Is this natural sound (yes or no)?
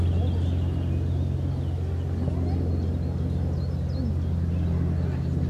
yes